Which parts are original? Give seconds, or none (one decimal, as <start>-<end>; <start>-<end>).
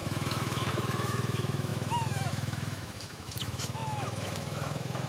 none